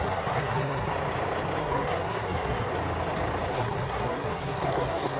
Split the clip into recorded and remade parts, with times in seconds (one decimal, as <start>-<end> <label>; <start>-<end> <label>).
0.0-0.9 remade; 0.9-1.6 recorded; 1.6-2.7 remade; 2.7-3.5 recorded; 3.5-5.2 remade